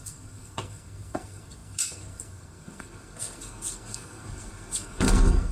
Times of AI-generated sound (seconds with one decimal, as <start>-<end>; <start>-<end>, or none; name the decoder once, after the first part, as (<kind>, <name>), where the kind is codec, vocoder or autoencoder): 0.0-5.5 (codec, SNAC)